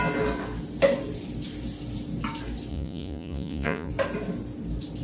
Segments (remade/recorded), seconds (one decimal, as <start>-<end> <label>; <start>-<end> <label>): 0.0-2.7 recorded; 2.7-3.9 remade; 3.9-5.0 recorded